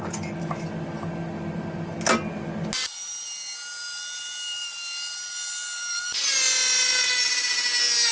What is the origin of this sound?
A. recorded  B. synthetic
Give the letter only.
A